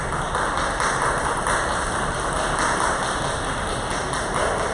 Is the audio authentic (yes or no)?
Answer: yes